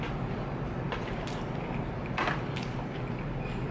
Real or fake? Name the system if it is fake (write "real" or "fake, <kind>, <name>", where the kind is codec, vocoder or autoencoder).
real